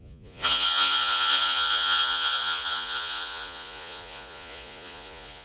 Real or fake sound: fake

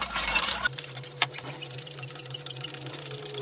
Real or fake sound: fake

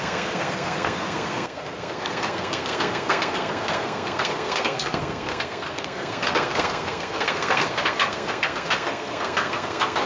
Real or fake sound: fake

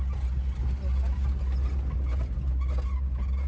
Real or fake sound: real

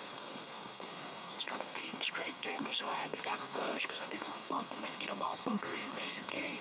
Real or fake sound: fake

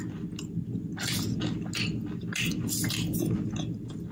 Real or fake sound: real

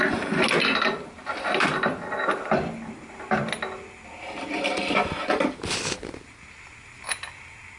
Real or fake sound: real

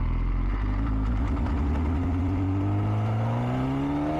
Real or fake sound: real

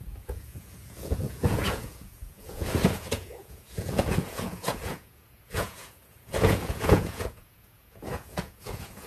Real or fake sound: fake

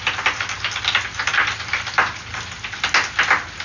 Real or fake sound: real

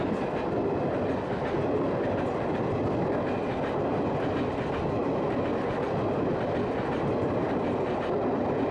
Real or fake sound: real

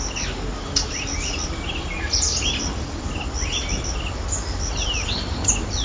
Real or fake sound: real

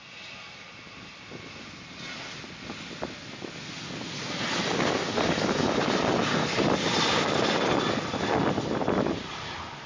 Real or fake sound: real